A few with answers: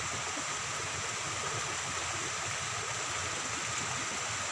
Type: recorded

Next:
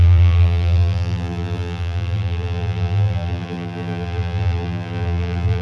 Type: remade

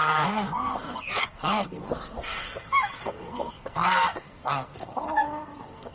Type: remade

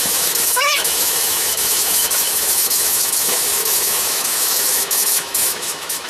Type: remade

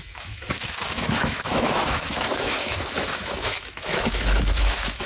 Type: remade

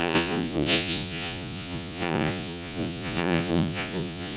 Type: remade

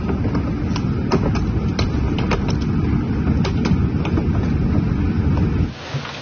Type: recorded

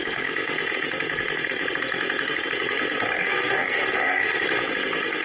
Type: remade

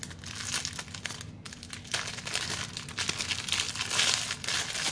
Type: recorded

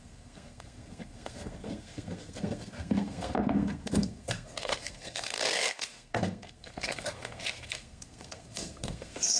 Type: remade